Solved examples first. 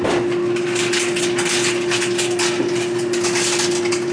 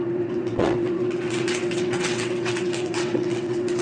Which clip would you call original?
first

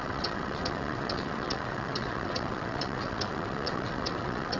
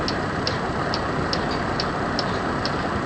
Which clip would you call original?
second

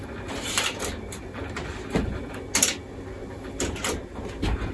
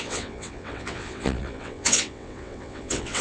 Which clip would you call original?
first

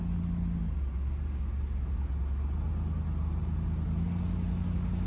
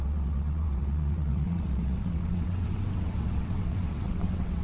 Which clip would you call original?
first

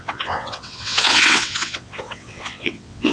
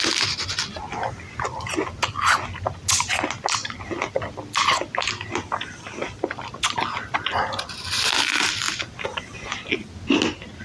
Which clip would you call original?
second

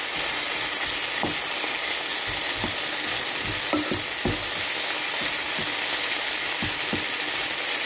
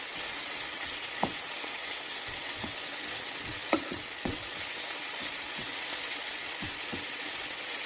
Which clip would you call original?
first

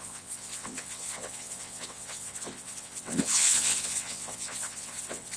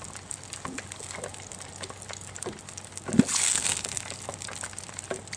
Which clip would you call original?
second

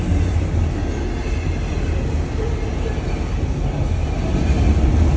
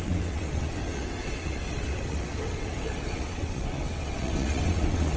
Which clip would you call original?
first